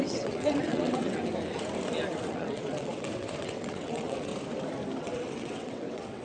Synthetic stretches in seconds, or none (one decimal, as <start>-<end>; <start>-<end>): 0.0-1.2; 2.2-4.3; 5.0-6.2